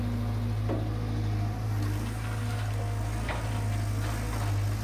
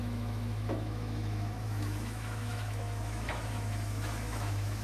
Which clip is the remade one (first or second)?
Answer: second